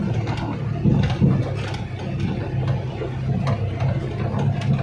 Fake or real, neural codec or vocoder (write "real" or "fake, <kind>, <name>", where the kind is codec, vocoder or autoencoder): real